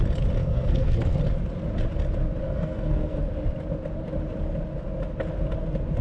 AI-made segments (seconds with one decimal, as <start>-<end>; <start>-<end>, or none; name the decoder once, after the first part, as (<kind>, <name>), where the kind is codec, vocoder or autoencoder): 0.4-1.2 (codec, SNAC); 2.4-3.2

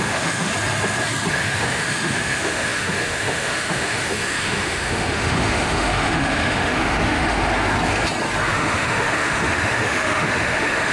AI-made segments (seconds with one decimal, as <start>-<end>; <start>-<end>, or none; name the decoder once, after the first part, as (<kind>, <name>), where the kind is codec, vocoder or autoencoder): 0.0-0.5 (autoencoder, DAC-VAE); 1.3-7.5; 8.5-10.9

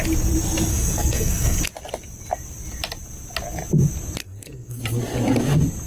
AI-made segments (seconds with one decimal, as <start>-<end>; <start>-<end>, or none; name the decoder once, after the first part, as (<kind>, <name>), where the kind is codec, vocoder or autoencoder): 0.7-1.6 (codec, SNAC); 4.2-4.8